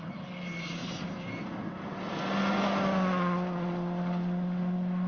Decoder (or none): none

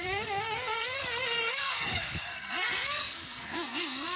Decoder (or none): codec, SNAC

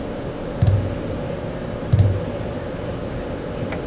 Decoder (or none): none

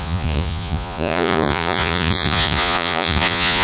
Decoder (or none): vocoder, Vocos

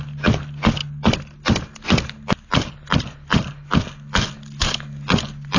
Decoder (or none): none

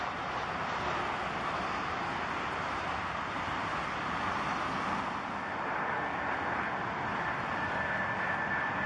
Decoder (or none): none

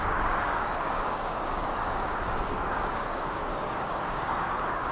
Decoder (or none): codec, DAC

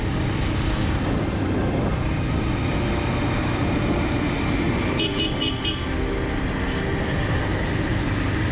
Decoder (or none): none